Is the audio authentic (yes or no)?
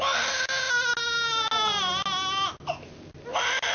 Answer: yes